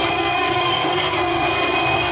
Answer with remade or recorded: remade